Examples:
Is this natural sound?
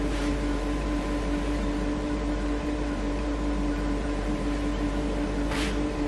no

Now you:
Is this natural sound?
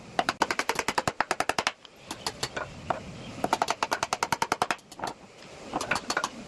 yes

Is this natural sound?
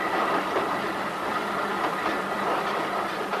yes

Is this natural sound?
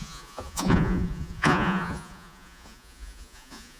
no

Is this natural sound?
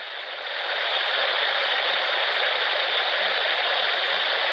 yes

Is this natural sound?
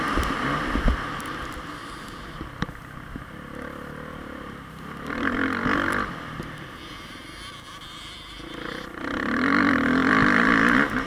no